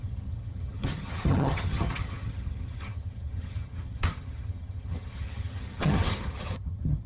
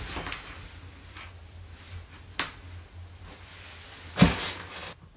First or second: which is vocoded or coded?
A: first